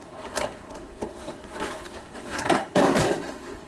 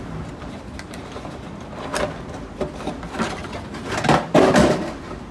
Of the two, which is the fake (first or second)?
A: first